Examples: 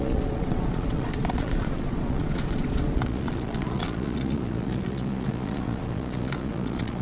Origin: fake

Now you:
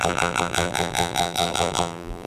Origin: fake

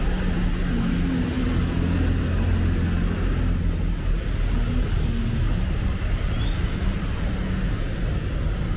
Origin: real